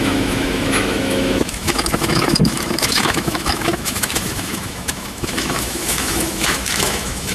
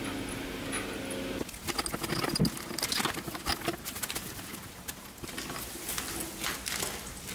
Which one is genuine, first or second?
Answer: second